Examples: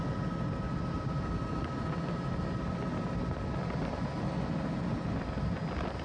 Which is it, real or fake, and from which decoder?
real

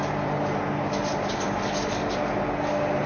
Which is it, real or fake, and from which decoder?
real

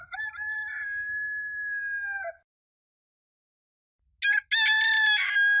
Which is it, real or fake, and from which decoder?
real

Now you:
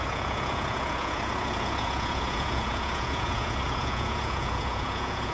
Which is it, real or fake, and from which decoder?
fake, vocoder, Vocos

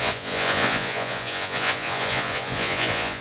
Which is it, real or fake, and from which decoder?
fake, vocoder, Vocos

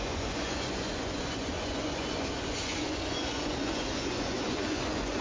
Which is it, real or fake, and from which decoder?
fake, vocoder, Vocos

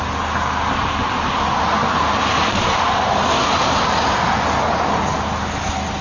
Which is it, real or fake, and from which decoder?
real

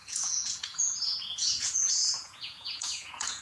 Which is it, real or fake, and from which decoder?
fake, vocoder, Vocos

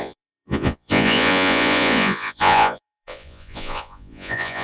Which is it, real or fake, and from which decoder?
fake, vocoder, Vocos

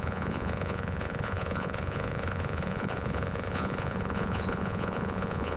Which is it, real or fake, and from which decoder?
fake, vocoder, Vocos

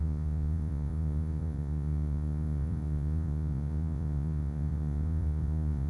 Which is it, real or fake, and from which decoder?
fake, vocoder, Vocos